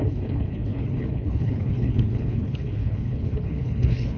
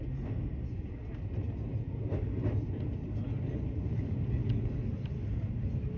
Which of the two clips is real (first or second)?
second